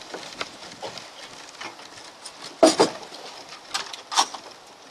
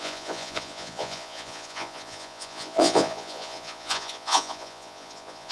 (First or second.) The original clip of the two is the first